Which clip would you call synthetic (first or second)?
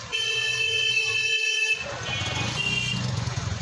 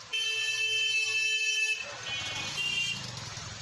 first